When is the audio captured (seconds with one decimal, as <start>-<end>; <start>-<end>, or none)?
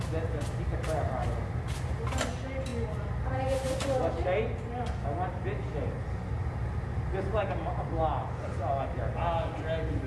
0.0-10.1